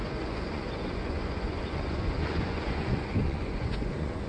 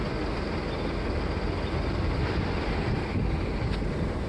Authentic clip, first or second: second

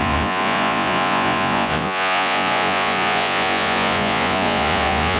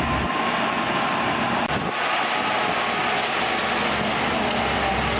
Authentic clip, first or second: second